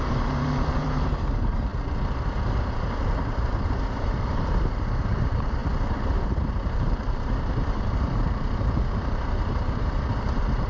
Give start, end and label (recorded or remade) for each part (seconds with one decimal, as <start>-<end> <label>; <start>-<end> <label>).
0.0-1.7 remade; 1.7-2.7 recorded; 2.7-5.6 remade; 5.6-6.5 recorded; 6.5-10.7 remade